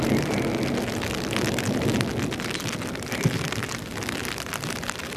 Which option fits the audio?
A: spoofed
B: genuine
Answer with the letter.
B